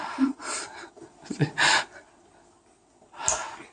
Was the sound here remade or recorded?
recorded